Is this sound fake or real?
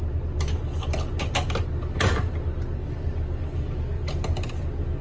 real